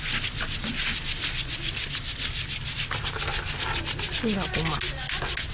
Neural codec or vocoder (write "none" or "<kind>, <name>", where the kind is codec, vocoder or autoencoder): none